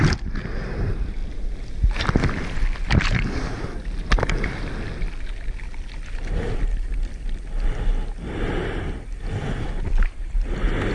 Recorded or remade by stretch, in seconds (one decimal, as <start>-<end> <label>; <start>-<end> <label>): 0.0-10.9 recorded